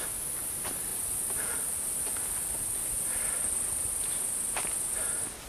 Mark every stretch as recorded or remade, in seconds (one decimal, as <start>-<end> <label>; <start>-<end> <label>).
0.0-0.9 recorded; 0.9-4.2 remade; 4.2-5.5 recorded